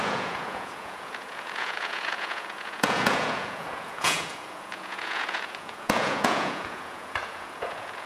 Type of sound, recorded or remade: remade